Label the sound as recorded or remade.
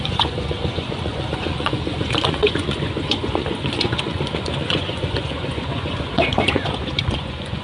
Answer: remade